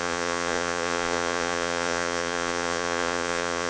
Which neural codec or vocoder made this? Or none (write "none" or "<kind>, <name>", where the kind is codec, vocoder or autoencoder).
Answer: vocoder, Vocos